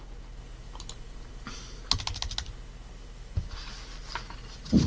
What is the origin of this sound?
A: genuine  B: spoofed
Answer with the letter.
A